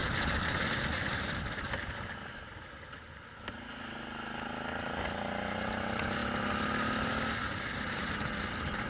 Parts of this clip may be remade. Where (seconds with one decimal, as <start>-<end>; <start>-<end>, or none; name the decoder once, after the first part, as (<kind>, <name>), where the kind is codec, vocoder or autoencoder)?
none